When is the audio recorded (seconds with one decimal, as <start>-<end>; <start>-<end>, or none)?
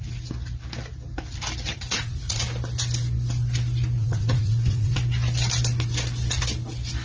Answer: 0.0-1.7; 2.4-4.0; 5.0-7.0